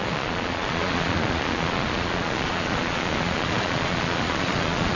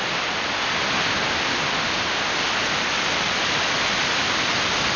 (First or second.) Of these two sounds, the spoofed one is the first